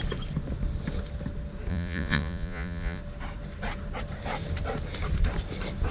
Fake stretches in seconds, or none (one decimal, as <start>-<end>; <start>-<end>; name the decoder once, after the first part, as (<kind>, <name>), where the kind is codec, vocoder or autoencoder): 1.7-3.0 (vocoder, Vocos)